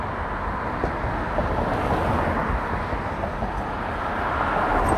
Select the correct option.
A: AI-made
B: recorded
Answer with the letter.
B